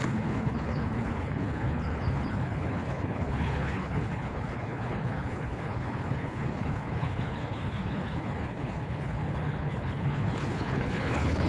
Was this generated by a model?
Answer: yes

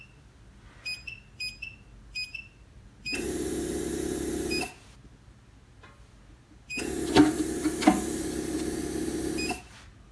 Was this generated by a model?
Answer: no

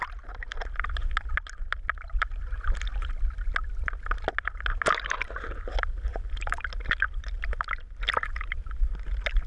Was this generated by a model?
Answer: no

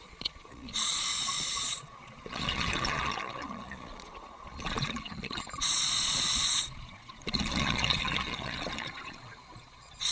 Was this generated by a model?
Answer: yes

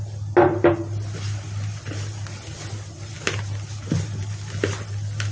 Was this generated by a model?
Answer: no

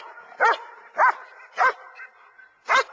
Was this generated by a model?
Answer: no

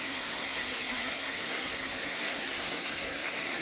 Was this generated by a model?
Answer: yes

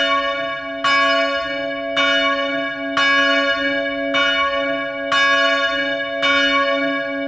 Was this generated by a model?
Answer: no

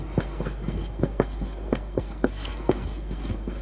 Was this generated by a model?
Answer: yes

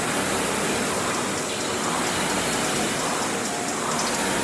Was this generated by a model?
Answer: no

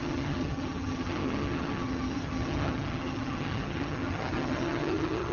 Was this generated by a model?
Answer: yes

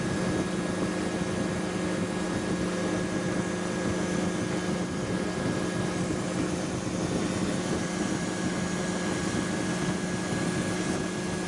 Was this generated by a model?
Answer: no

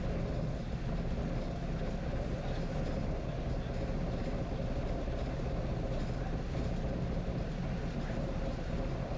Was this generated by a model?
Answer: no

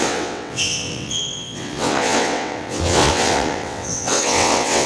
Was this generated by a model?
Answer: yes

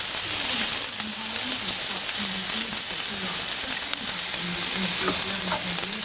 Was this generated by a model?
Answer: no